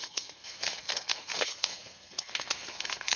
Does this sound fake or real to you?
fake